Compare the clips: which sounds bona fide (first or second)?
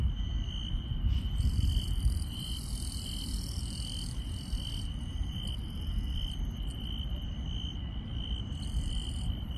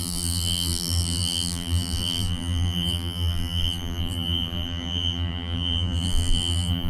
first